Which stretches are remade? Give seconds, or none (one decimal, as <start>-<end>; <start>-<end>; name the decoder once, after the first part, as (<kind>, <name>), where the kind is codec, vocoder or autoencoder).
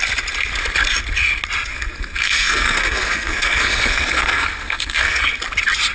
1.7-5.2 (codec, SNAC)